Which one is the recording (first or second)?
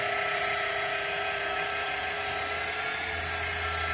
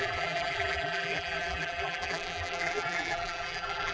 first